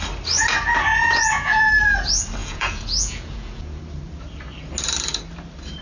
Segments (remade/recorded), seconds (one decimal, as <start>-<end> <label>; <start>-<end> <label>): 0.0-0.9 recorded; 0.9-1.7 remade; 1.7-2.4 recorded; 2.4-3.8 remade; 3.8-5.8 recorded